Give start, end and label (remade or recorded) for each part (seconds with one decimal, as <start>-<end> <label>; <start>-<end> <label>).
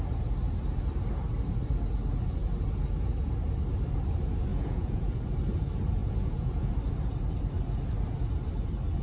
0.0-4.5 recorded; 4.5-5.2 remade; 5.2-6.0 recorded; 6.0-6.7 remade; 6.7-9.0 recorded